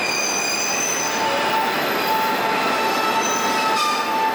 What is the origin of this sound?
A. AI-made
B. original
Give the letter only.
B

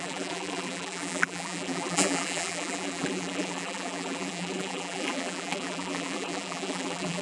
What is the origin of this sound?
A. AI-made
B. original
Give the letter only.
A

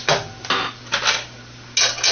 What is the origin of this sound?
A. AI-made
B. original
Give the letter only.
B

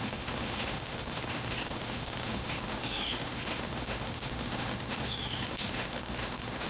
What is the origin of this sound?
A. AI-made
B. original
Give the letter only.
A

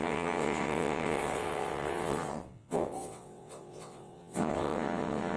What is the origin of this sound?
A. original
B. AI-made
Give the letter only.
B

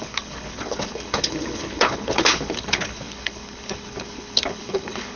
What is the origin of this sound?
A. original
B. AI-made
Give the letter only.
B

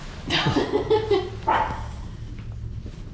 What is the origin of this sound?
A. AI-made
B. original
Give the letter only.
B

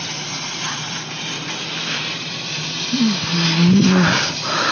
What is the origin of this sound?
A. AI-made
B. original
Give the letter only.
B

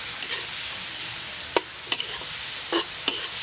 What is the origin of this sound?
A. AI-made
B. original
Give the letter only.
B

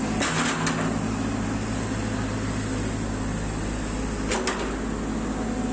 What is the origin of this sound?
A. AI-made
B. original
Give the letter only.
B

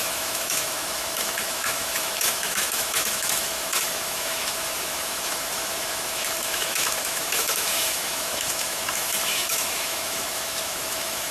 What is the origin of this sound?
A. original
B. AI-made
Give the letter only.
B